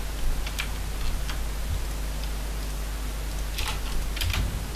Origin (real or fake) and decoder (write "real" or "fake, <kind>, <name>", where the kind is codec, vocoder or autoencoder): real